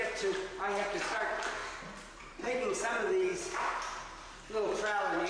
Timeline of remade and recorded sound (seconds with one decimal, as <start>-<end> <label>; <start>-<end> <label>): 0.0-1.6 remade; 1.6-2.2 recorded; 2.2-3.3 remade; 3.3-5.3 recorded